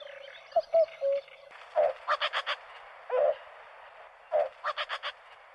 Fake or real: real